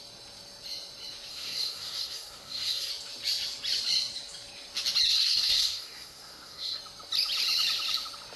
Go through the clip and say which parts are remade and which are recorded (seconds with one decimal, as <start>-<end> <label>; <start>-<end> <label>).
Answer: 0.0-1.3 recorded; 1.3-2.9 remade; 2.9-5.1 recorded; 5.1-6.8 remade; 6.8-8.4 recorded